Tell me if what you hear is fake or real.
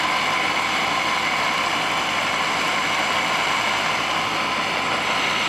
real